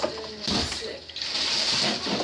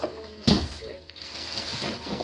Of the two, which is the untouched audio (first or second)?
first